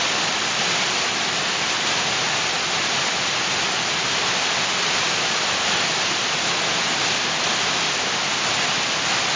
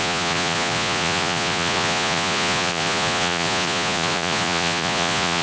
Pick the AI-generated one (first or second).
second